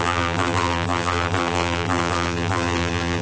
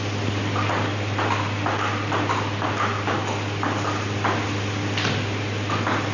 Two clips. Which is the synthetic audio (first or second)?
first